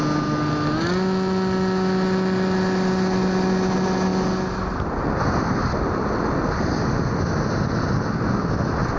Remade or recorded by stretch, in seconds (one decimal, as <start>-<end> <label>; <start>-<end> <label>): 0.0-9.0 recorded